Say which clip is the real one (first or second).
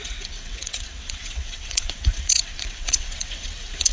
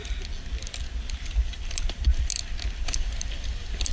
second